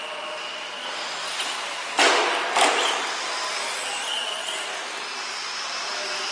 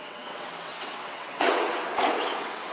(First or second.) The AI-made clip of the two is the second